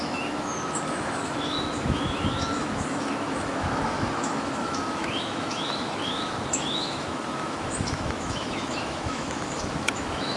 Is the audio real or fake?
fake